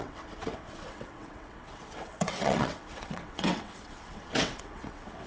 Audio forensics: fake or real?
fake